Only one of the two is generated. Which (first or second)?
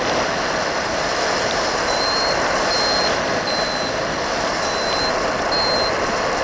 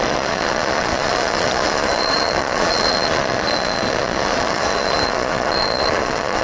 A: second